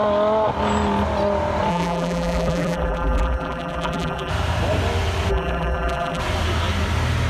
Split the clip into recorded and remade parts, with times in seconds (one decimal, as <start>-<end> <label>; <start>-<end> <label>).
0.0-1.7 recorded; 1.7-4.3 remade; 4.3-5.3 recorded; 5.3-6.2 remade; 6.2-7.3 recorded